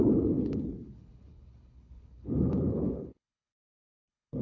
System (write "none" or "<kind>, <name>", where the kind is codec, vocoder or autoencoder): codec, HILCodec